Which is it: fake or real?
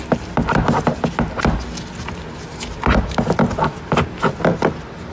real